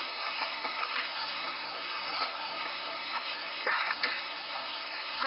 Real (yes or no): no